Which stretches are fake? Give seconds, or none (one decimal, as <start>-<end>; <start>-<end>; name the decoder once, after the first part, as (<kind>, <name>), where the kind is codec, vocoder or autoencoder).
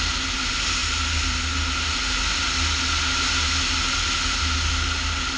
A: none